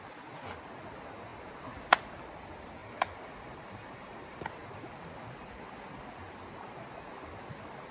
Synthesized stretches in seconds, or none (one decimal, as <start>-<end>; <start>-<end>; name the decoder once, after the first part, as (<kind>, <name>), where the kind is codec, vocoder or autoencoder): 2.8-4.5 (vocoder, BigVGAN v2)